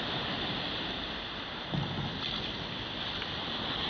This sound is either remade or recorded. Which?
recorded